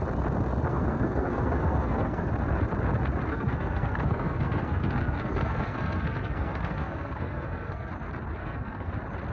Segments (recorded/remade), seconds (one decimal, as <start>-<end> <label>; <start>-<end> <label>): 0.0-0.7 recorded; 0.7-2.3 remade; 2.3-3.3 recorded; 3.3-7.9 remade; 7.9-8.4 recorded; 8.4-8.9 remade; 8.9-9.3 recorded